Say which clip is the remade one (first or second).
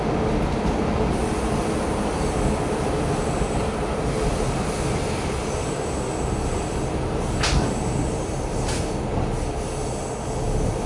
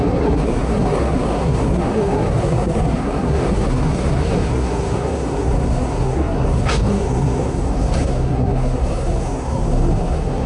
second